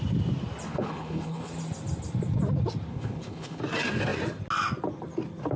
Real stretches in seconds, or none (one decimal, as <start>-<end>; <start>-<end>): 0.0-0.7; 1.5-2.9; 3.6-5.6